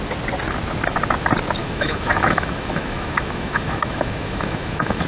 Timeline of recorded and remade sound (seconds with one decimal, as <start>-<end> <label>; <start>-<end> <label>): 0.0-1.6 recorded; 1.6-5.1 remade